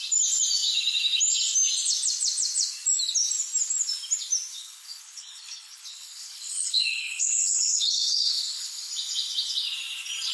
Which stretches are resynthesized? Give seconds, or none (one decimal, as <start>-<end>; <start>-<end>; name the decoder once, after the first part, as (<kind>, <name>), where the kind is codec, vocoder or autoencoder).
4.5-8.9 (codec, HILCodec)